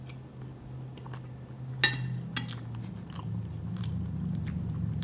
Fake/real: real